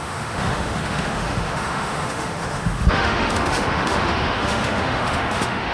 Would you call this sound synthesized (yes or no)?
yes